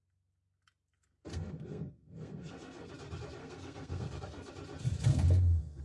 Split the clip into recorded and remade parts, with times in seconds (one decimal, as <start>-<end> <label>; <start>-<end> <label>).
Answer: 0.0-1.3 recorded; 1.3-2.9 remade; 2.9-3.4 recorded; 3.4-4.5 remade; 4.5-5.1 recorded; 5.1-5.8 remade